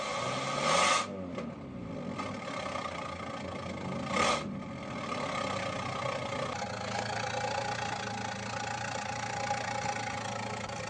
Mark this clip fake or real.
real